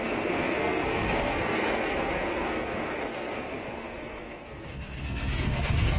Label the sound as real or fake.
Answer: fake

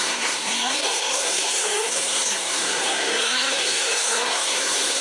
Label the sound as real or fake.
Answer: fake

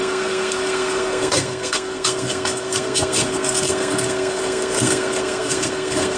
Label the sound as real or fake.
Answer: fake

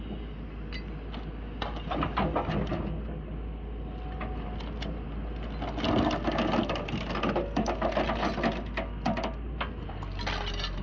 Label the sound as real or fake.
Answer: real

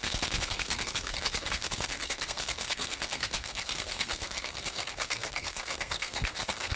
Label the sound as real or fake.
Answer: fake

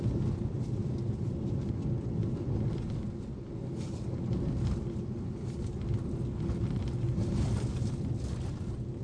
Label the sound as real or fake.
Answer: real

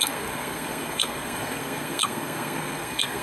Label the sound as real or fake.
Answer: fake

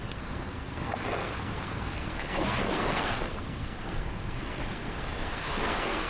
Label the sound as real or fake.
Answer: fake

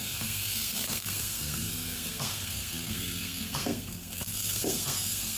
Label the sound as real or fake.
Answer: fake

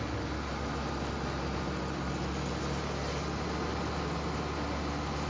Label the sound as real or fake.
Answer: real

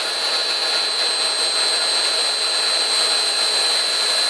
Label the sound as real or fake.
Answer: real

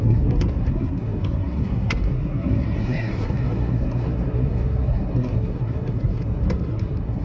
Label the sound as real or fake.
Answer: fake